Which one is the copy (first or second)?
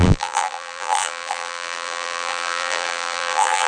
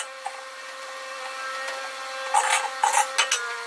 first